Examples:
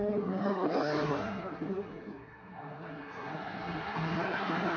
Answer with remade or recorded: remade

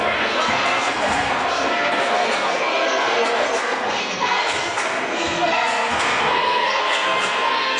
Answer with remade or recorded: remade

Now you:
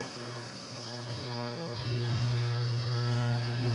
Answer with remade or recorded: remade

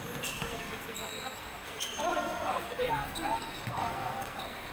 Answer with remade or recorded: remade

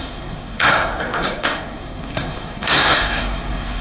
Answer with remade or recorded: remade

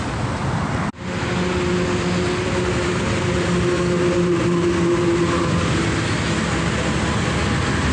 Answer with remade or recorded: recorded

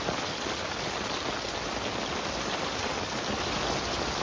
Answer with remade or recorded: recorded